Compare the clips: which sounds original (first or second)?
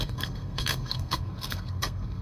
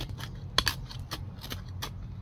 second